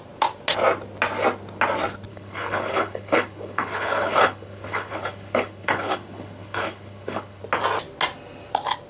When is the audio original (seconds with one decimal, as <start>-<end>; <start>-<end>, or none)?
0.0-2.1; 7.4-8.9